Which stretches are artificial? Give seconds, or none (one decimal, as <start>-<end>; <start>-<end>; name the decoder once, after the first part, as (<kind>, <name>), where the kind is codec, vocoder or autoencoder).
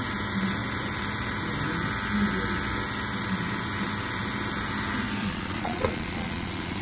5.2-6.8 (vocoder, Vocos)